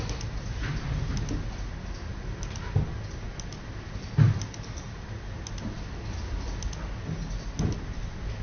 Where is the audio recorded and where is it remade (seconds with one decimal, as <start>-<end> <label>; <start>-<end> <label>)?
0.0-8.4 recorded